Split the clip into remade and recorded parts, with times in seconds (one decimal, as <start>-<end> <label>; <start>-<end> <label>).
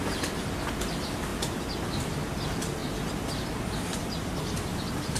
0.0-5.2 recorded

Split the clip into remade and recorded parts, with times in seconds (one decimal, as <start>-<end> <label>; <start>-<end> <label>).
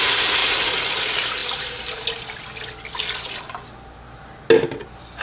0.0-0.4 recorded; 0.4-0.9 remade; 0.9-5.2 recorded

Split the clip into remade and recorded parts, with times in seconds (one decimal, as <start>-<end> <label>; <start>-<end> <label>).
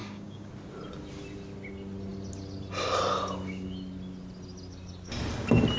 0.0-0.5 remade; 0.5-5.8 recorded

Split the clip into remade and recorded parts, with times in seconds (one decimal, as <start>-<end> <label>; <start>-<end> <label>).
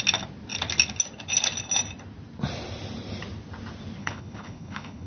0.0-4.0 recorded; 4.0-5.1 remade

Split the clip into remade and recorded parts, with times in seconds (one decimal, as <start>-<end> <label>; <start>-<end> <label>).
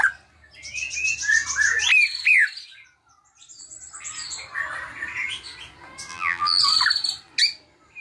0.0-6.1 recorded; 6.1-6.6 remade; 6.6-8.0 recorded